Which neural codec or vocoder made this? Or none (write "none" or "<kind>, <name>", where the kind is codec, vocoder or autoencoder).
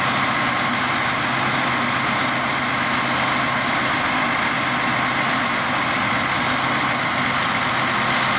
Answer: none